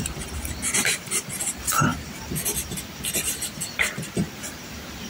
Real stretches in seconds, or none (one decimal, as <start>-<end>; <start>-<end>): 0.0-1.9